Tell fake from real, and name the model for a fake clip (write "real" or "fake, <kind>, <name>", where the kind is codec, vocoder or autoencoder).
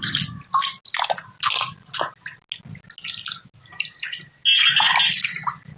real